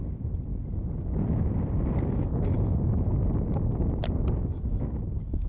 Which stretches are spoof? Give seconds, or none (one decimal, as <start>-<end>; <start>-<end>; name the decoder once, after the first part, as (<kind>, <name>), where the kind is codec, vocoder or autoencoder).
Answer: none